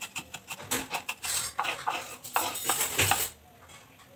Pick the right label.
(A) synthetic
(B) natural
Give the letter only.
B